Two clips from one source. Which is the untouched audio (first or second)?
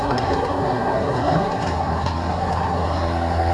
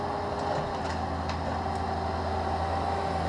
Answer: second